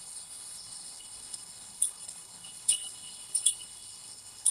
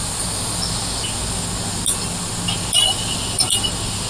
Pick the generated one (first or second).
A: first